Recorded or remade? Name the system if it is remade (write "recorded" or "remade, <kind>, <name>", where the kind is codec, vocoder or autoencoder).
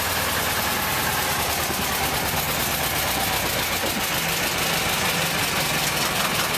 recorded